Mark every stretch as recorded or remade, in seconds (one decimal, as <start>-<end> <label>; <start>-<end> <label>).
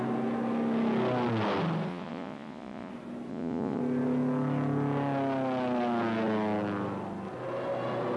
0.0-1.9 recorded; 1.9-2.9 remade; 2.9-3.3 recorded; 3.3-3.8 remade; 3.8-8.2 recorded